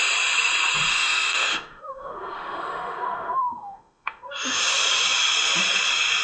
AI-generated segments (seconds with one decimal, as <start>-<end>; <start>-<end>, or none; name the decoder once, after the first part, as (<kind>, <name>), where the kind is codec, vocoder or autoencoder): 0.9-4.6 (autoencoder, DAC-VAE)